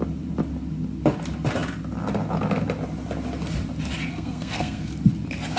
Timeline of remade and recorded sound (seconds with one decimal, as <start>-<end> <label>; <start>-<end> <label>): 0.0-4.1 recorded; 4.1-4.9 remade; 4.9-5.6 recorded